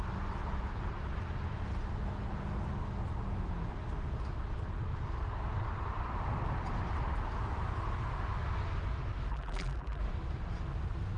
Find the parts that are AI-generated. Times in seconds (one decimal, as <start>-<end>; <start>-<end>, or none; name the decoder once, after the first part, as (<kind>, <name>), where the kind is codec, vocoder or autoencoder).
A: 9.3-10.0 (vocoder, BigVGAN v2)